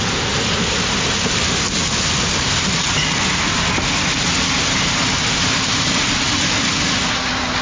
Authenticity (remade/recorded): recorded